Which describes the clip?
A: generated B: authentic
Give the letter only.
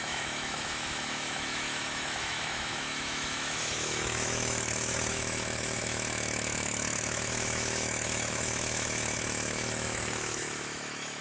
A